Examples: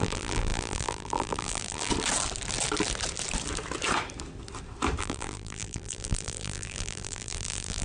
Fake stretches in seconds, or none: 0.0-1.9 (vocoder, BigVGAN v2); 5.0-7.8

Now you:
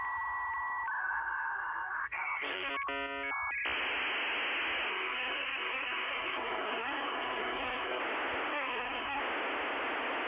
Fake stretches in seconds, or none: 1.0-2.7 (codec, SNAC); 4.9-8.0; 8.5-9.2

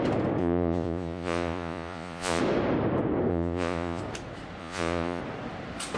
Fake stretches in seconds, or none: 0.4-2.4 (vocoder, Vocos); 3.3-4.0; 4.6-5.2

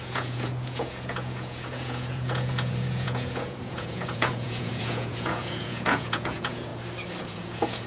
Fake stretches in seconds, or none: 0.0-6.7 (vocoder, Vocos); 7.2-7.9